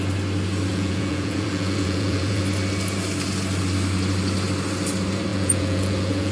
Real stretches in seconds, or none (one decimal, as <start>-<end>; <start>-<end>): 0.0-0.7; 2.4-5.3